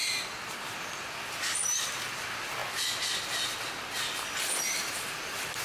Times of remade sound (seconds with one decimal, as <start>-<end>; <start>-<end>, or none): 0.0-2.6